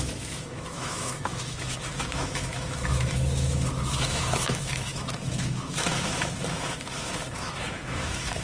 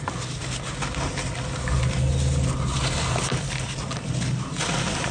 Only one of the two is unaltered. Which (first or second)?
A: second